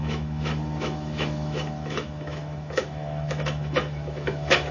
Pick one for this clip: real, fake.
fake